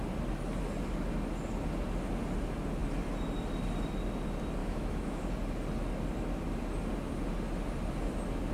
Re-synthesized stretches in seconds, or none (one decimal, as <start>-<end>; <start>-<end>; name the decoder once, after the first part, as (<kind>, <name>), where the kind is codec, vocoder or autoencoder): 4.6-5.3 (autoencoder, DAC-VAE)